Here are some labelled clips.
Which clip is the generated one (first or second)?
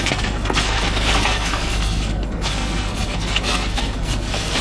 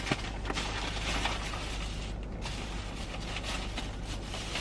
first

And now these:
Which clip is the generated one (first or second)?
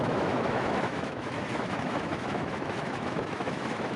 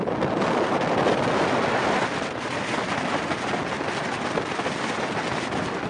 first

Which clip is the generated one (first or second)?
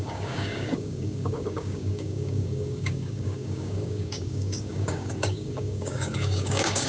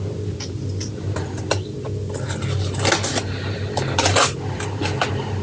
first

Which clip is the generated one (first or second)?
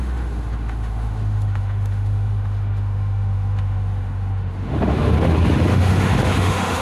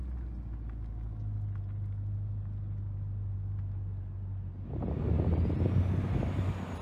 first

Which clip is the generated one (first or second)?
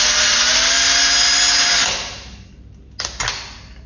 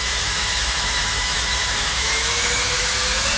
second